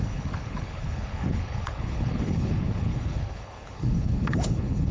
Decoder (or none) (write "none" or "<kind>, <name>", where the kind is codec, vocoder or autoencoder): codec, HILCodec